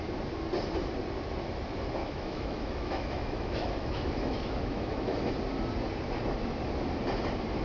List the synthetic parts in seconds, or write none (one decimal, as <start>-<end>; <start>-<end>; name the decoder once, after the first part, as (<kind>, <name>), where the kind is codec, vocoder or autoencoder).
2.0-5.3 (autoencoder, DAC-VAE)